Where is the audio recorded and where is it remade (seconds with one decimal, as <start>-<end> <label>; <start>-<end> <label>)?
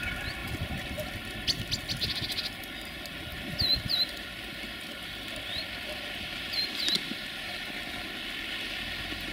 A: 0.0-0.4 recorded; 0.4-1.1 remade; 1.1-3.3 recorded; 3.3-8.0 remade; 8.0-9.3 recorded